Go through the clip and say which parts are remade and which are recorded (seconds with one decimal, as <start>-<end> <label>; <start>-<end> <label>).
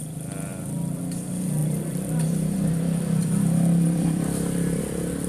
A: 0.0-0.5 recorded; 0.5-1.0 remade; 1.0-1.6 recorded; 1.6-4.8 remade; 4.8-5.3 recorded